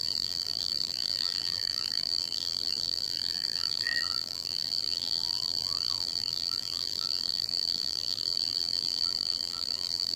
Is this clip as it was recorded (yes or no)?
no